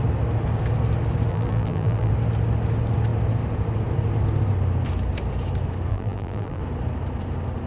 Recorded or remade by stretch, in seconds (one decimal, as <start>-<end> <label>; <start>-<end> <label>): 0.0-1.3 recorded; 1.3-2.1 remade; 2.1-5.9 recorded; 5.9-6.6 remade; 6.6-7.7 recorded